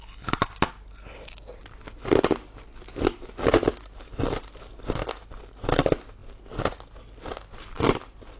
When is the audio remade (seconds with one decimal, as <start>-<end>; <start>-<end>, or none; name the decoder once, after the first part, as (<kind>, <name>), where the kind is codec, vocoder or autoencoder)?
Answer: none

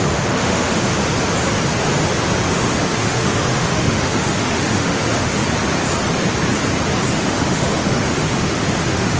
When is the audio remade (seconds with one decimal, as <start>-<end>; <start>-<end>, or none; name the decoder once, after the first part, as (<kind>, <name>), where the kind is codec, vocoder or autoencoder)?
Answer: 0.0-1.0 (autoencoder, DAC-VAE); 2.5-5.4; 7.1-9.2

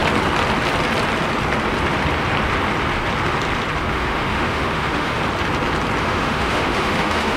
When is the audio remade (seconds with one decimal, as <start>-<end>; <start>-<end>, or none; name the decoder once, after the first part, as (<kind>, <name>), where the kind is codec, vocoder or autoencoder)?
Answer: 3.8-5.2 (autoencoder, DAC-VAE); 6.0-7.4

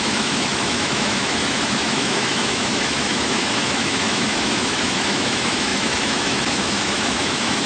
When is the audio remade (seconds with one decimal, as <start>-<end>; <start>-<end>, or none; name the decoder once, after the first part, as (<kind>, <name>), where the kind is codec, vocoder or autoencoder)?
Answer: 0.0-7.7 (autoencoder, DAC-VAE)